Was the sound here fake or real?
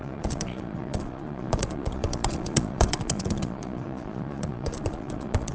fake